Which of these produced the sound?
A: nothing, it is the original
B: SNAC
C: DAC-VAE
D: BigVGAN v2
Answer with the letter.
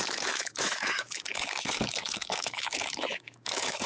C